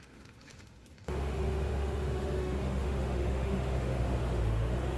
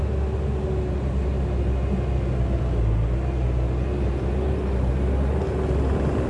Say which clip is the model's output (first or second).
first